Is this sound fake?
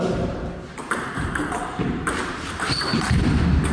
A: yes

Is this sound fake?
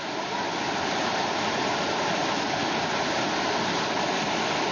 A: no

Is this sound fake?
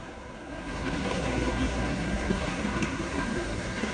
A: yes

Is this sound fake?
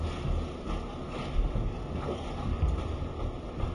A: no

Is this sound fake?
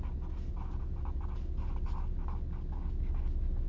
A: no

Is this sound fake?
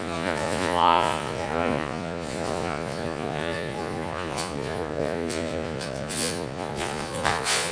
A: yes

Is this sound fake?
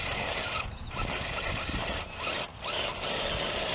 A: no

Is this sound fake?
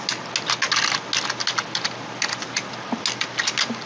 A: no